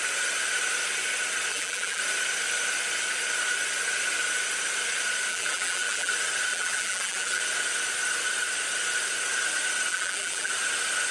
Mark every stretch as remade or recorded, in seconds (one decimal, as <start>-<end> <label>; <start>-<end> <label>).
0.0-1.5 recorded; 1.5-2.0 remade; 2.0-5.3 recorded; 5.3-6.1 remade; 6.1-6.5 recorded; 6.5-7.4 remade; 7.4-9.9 recorded; 9.9-10.5 remade; 10.5-11.1 recorded